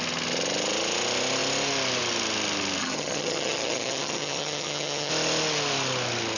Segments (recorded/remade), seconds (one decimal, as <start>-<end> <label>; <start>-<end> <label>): 0.0-2.8 recorded; 2.8-5.1 remade; 5.1-6.4 recorded